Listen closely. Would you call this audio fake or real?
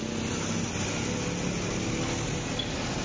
real